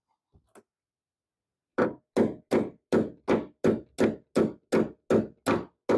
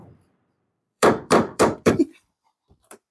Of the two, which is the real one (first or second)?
first